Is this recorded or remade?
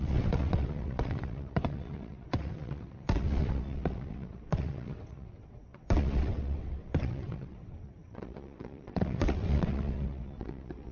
remade